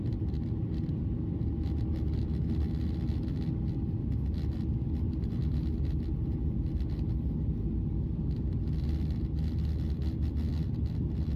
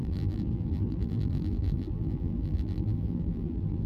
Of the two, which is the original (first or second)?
first